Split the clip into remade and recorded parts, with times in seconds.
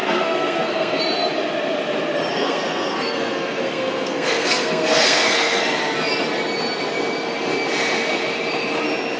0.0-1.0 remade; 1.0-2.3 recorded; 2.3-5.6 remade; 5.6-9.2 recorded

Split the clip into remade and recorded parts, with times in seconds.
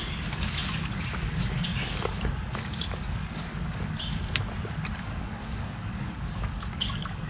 0.0-4.1 remade; 4.1-5.0 recorded; 5.0-7.3 remade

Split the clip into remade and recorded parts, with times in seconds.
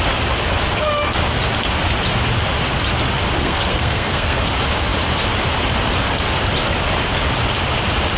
0.0-3.4 recorded; 3.4-4.4 remade; 4.4-8.2 recorded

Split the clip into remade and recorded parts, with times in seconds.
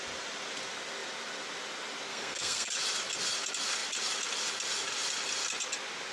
0.0-2.1 recorded; 2.1-2.7 remade; 2.7-6.1 recorded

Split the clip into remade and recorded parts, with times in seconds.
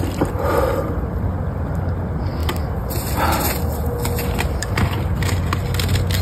0.0-2.4 recorded; 2.4-3.2 remade; 3.2-4.6 recorded; 4.6-5.4 remade; 5.4-6.2 recorded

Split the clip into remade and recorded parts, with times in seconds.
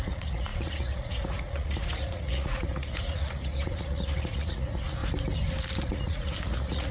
0.0-5.0 remade; 5.0-5.8 recorded; 5.8-6.9 remade